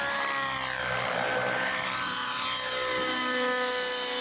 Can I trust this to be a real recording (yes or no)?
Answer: yes